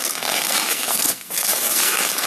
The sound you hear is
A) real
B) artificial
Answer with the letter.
B